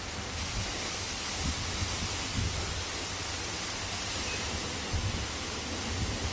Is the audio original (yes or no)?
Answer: yes